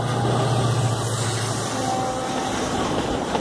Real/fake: real